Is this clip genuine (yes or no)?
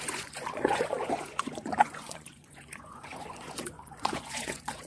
no